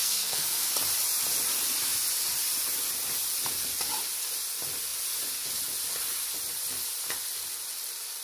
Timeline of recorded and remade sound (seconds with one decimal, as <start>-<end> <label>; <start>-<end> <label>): 0.0-0.7 remade; 0.7-8.2 recorded